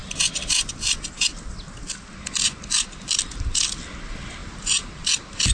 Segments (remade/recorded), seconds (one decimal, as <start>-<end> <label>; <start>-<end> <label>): 0.0-4.4 recorded; 4.4-5.1 remade; 5.1-5.5 recorded